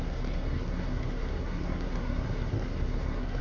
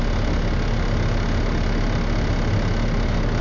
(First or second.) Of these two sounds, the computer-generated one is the first